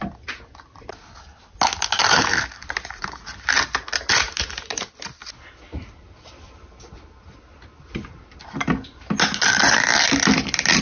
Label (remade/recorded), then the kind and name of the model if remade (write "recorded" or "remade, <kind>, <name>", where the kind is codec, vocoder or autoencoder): recorded